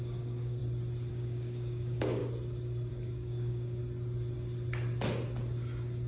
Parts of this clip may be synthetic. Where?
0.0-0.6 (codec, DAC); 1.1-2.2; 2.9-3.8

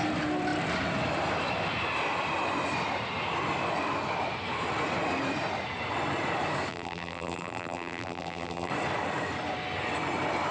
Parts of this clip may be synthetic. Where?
6.7-8.7 (vocoder, BigVGAN v2)

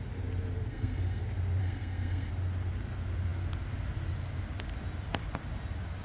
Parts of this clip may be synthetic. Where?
0.7-1.2 (codec, SNAC); 1.6-2.3

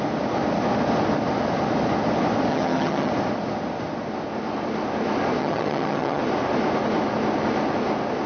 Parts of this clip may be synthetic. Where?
2.5-3.1 (vocoder, HiFi-GAN); 5.4-6.2

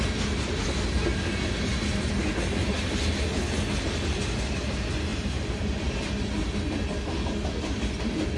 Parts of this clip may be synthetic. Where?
5.1-6.1 (vocoder, BigVGAN v2)

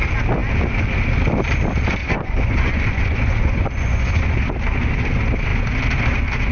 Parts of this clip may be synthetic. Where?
2.0-4.2 (vocoder, Vocos)

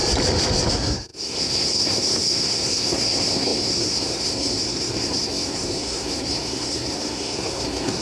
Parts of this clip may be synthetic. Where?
0.7-8.0 (codec, SNAC)